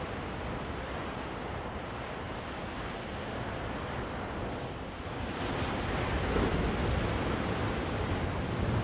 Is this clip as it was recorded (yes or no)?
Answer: yes